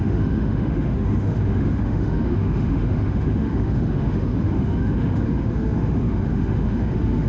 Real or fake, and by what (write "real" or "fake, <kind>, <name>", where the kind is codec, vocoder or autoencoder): fake, autoencoder, DAC-VAE